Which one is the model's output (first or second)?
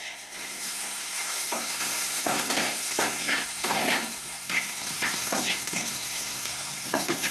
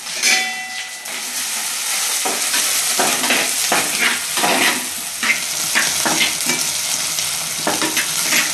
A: first